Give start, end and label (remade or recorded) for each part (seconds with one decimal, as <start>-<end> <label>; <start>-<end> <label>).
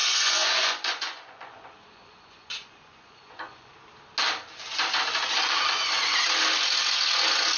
0.0-3.7 remade; 3.7-7.6 recorded